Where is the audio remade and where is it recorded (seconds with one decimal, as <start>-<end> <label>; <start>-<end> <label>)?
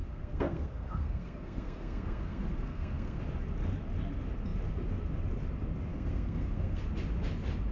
0.0-3.2 remade; 3.2-5.9 recorded; 5.9-6.8 remade; 6.8-7.7 recorded